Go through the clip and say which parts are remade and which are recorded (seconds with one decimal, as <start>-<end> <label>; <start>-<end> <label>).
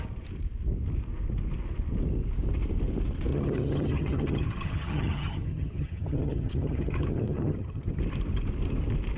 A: 0.0-3.3 recorded; 3.3-8.0 remade; 8.0-9.2 recorded